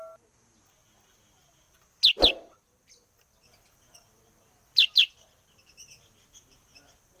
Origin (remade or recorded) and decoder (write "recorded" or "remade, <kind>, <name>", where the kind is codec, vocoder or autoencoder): recorded